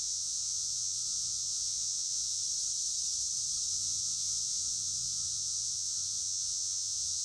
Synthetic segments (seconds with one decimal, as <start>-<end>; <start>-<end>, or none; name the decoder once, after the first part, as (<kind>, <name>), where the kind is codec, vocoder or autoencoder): 0.0-2.4 (vocoder, Vocos); 3.7-7.2